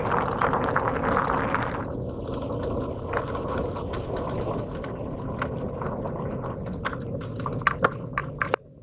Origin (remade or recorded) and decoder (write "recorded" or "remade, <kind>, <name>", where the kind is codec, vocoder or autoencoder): recorded